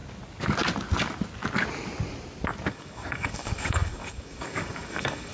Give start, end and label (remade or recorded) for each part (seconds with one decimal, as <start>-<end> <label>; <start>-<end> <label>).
0.0-2.7 recorded; 2.7-5.3 remade